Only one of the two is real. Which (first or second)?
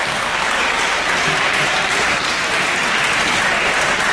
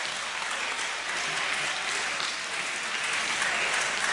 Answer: second